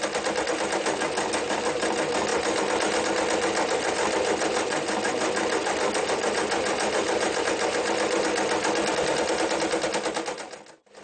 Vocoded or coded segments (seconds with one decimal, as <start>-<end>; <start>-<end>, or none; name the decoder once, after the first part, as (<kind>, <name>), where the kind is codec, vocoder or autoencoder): none